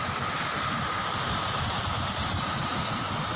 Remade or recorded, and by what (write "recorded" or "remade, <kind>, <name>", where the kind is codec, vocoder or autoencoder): recorded